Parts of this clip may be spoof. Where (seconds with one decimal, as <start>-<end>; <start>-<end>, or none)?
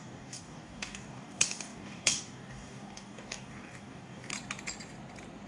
0.0-4.3